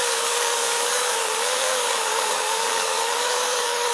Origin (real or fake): fake